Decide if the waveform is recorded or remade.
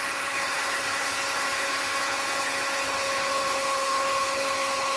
remade